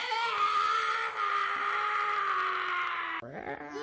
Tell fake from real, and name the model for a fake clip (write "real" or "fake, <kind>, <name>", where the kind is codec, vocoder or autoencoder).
real